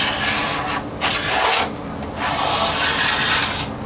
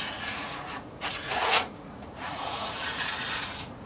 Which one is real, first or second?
first